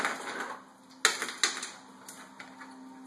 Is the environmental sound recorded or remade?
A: recorded